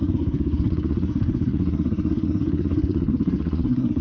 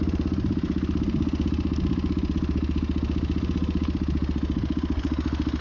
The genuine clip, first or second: second